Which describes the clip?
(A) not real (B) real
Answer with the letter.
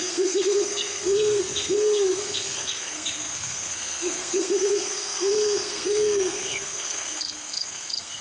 A